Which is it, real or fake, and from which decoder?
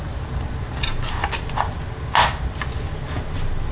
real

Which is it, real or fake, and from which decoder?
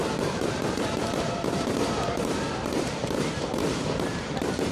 fake, vocoder, BigVGAN v2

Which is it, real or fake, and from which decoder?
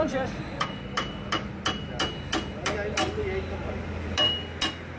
fake, vocoder, BigVGAN v2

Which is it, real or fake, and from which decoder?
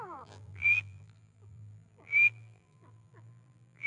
fake, vocoder, BigVGAN v2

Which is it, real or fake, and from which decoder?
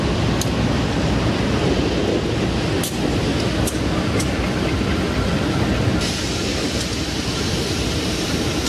real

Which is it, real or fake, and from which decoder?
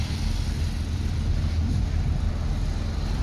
real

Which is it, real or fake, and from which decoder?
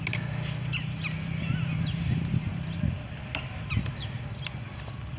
real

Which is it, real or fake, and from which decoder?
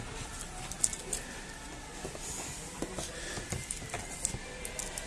real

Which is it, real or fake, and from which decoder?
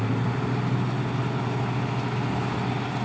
real